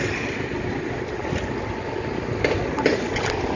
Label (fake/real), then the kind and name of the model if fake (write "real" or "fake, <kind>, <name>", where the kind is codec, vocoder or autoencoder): real